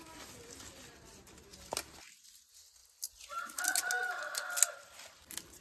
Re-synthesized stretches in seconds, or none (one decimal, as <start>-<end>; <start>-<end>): none